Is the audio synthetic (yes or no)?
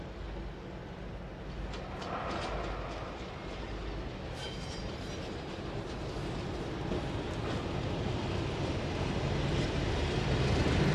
no